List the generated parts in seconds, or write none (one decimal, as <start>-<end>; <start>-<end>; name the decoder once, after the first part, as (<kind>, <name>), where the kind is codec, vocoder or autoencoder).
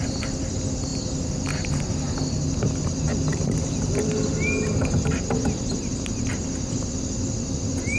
3.3-4.1 (vocoder, BigVGAN v2)